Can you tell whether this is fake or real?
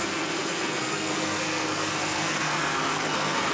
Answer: fake